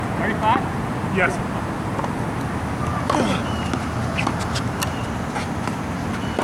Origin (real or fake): real